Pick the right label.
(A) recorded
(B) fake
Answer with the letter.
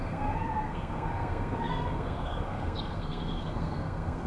B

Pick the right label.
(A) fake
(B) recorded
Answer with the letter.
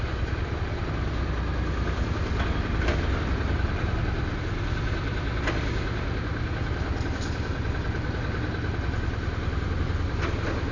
B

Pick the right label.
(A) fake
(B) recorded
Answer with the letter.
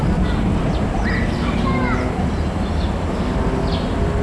B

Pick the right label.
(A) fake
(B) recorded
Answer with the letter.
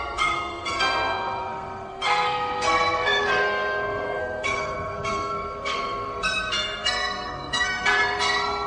A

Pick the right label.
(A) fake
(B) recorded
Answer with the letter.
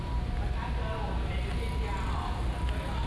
B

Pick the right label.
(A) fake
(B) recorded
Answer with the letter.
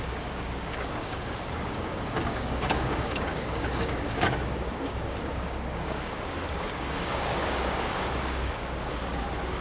A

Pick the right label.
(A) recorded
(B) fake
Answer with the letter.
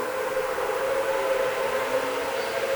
A